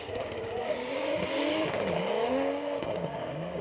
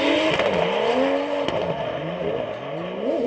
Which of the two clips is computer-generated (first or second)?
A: first